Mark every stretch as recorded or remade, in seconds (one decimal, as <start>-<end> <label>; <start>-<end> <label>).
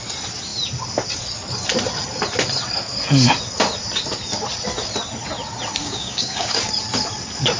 0.0-5.8 recorded; 5.8-6.6 remade; 6.6-7.6 recorded